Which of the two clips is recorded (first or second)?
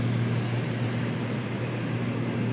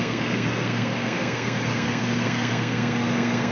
first